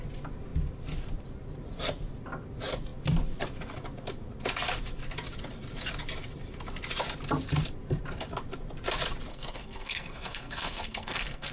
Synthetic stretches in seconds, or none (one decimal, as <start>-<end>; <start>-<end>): 9.3-11.5